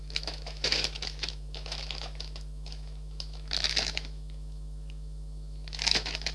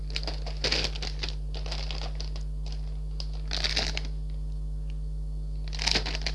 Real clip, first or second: second